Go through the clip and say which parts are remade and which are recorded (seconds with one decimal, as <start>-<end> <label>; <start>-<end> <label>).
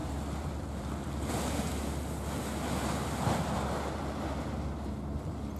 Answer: 0.0-1.3 remade; 1.3-5.6 recorded